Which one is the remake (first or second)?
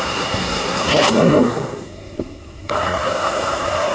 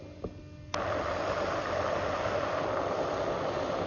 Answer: first